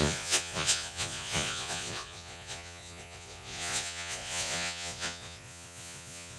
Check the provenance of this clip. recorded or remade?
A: remade